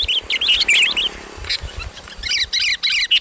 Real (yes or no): yes